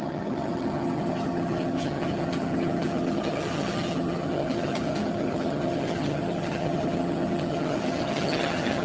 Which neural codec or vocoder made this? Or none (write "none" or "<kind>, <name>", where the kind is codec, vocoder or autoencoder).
vocoder, HiFi-GAN